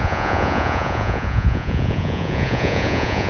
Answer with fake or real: fake